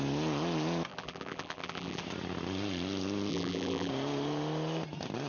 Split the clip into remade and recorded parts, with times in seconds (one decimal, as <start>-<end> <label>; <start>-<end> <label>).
0.0-0.9 recorded; 0.9-2.0 remade; 2.0-3.3 recorded; 3.3-3.9 remade; 3.9-5.3 recorded

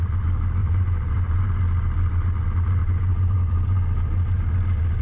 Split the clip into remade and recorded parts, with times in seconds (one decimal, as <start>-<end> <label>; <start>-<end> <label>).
0.0-0.6 recorded; 0.6-1.4 remade; 1.4-2.8 recorded; 2.8-3.4 remade; 3.4-5.0 recorded

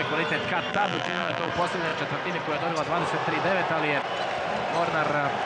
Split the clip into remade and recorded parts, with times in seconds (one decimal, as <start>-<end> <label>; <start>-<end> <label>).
0.0-0.7 recorded; 0.7-1.5 remade; 1.5-5.5 recorded

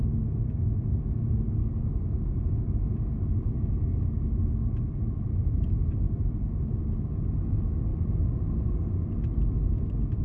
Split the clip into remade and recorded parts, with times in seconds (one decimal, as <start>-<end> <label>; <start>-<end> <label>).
0.0-3.9 recorded; 3.9-7.1 remade; 7.1-10.2 recorded

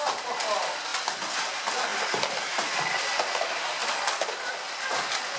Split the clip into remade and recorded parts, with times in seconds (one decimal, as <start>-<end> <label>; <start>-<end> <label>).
0.0-5.4 recorded

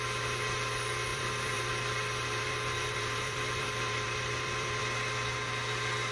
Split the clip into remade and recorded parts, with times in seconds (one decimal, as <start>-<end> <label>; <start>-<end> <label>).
0.0-1.1 recorded; 1.1-4.8 remade; 4.8-6.1 recorded

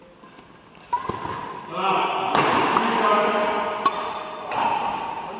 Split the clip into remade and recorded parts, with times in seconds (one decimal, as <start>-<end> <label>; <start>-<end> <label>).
0.0-5.4 recorded

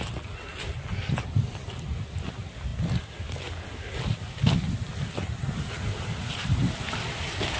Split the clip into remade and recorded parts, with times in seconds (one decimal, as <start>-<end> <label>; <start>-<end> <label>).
0.0-7.6 recorded